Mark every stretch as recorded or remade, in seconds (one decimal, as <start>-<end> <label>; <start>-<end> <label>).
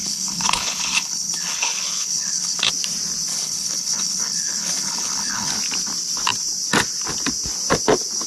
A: 0.0-2.7 remade; 2.7-3.3 recorded; 3.3-5.5 remade; 5.5-8.3 recorded